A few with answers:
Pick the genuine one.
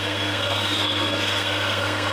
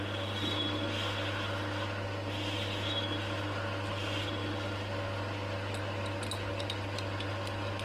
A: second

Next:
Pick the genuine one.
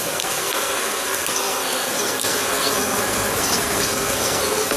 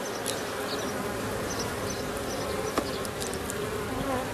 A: second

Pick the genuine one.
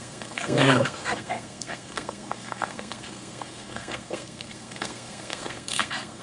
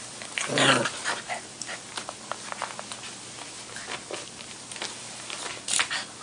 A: second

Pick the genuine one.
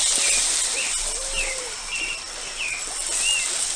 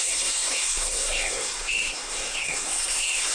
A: first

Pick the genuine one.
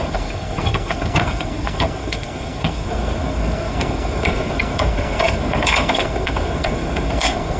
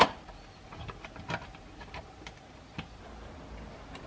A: second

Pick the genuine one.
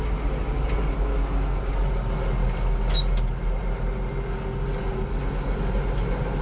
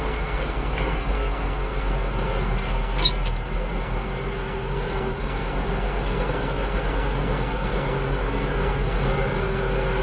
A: first